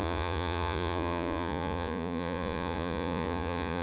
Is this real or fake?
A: fake